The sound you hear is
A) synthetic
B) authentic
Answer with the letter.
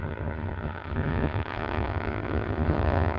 A